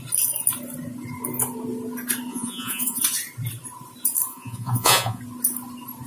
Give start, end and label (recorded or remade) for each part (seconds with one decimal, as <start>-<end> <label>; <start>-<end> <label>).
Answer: 0.0-2.3 recorded; 2.3-3.0 remade; 3.0-4.3 recorded; 4.3-5.2 remade; 5.2-6.1 recorded